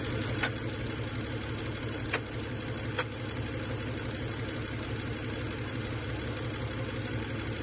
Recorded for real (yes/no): yes